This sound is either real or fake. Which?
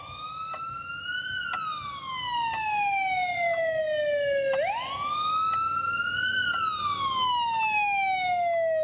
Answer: real